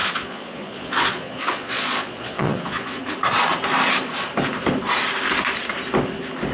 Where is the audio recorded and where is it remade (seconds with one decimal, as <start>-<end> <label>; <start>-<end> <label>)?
0.0-3.0 remade; 3.0-6.5 recorded